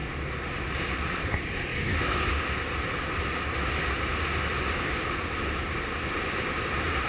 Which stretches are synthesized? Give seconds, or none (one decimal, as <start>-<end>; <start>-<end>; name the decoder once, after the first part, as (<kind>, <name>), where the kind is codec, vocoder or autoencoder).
1.7-2.3 (codec, DAC)